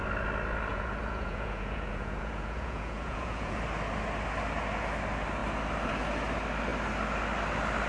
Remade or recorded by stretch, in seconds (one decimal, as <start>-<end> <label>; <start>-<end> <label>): 0.0-0.7 recorded; 0.7-3.6 remade; 3.6-7.9 recorded